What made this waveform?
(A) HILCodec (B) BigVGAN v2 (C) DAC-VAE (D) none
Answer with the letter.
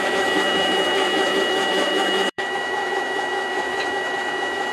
C